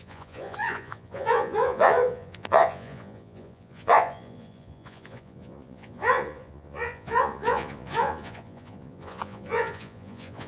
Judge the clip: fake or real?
fake